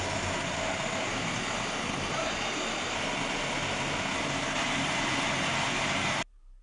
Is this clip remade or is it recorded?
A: recorded